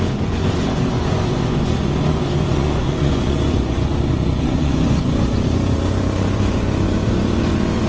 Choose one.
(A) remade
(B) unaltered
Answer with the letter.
A